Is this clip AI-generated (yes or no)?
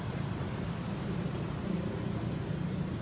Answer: yes